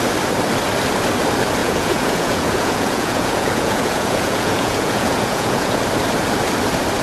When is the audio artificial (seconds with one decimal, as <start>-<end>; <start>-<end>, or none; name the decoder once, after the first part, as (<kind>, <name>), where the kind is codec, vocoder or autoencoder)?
1.6-5.8 (vocoder, Vocos)